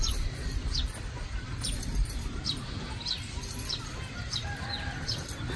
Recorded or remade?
recorded